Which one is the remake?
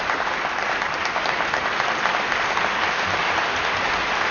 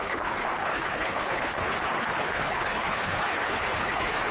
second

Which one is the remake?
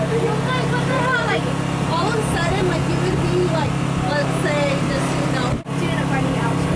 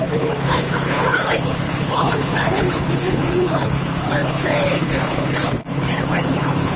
second